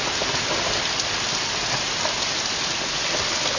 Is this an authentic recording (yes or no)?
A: yes